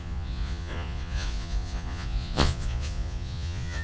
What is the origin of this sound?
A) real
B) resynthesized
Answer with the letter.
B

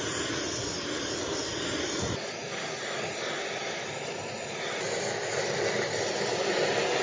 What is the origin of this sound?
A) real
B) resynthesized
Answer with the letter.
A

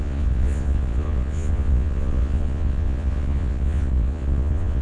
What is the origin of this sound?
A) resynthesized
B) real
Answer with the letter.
A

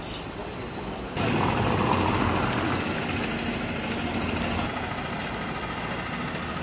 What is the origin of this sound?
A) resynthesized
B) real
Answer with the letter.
B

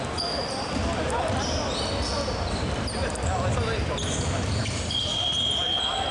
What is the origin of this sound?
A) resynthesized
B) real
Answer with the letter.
B